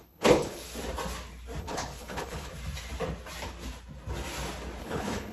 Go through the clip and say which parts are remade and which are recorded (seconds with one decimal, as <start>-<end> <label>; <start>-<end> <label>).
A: 0.0-0.6 remade; 0.6-1.6 recorded; 1.6-2.5 remade; 2.5-4.8 recorded; 4.8-5.3 remade